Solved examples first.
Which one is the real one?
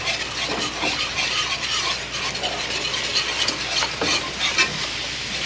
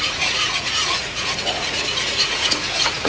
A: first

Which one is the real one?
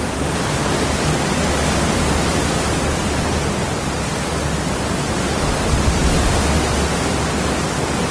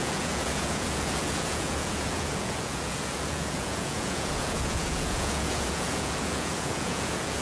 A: first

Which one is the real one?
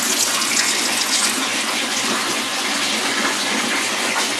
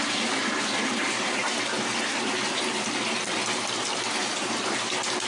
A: second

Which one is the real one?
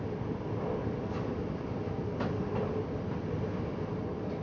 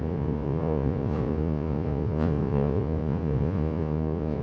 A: first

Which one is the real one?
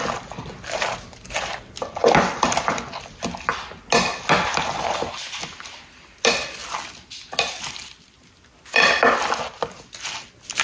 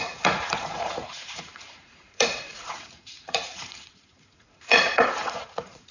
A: first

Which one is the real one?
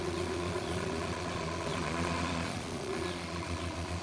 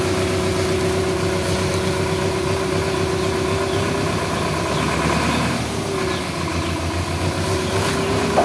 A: second